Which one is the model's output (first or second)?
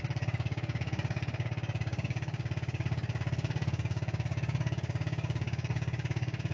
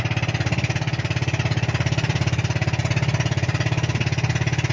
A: first